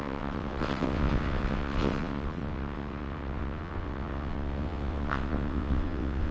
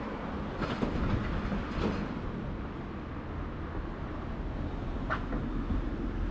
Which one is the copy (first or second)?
first